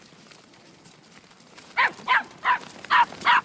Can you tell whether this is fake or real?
real